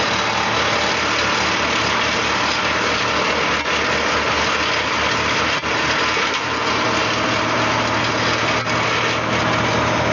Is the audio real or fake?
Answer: real